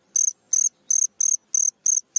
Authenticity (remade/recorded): recorded